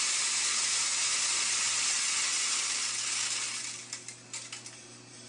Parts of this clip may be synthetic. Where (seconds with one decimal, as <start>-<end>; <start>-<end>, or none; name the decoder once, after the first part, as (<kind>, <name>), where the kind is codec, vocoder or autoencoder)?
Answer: none